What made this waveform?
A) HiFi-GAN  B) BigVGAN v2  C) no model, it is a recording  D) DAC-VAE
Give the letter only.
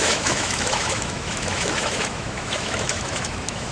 D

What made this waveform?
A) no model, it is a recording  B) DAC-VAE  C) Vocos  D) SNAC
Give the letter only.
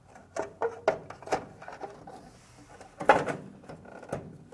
A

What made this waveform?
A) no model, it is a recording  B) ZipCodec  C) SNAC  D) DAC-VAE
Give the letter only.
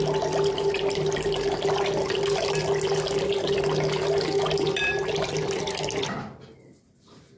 A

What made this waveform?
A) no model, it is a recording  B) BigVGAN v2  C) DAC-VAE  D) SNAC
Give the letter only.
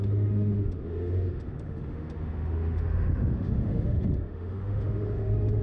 C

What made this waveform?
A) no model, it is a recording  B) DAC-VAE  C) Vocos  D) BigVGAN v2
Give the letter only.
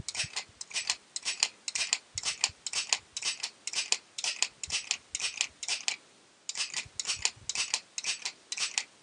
A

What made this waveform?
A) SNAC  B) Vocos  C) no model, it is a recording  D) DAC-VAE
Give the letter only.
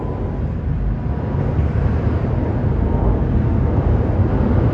C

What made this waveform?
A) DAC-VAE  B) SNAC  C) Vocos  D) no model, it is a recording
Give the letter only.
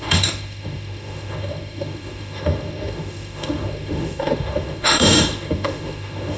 A